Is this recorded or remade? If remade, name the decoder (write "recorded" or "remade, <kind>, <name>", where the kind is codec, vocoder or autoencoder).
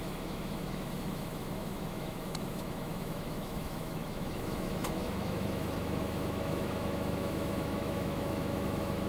remade, autoencoder, DAC-VAE